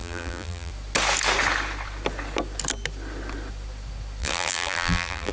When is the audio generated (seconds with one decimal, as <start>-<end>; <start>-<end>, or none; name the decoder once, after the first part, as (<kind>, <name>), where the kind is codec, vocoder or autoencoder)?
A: 0.0-0.7 (vocoder, BigVGAN v2); 4.2-5.3